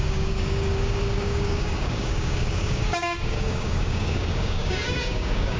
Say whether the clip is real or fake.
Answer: fake